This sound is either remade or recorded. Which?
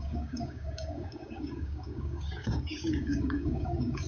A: remade